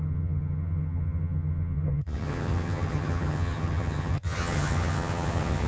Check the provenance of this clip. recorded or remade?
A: remade